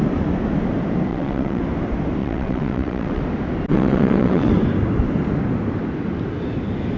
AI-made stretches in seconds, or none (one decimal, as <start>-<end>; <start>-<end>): 1.1-1.6; 2.2-3.2; 3.7-4.5